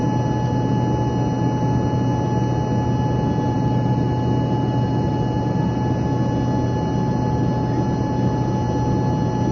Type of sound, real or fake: real